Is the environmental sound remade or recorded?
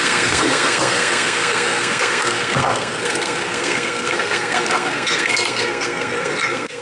remade